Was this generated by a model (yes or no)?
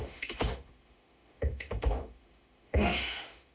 yes